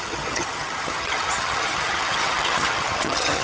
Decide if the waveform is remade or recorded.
remade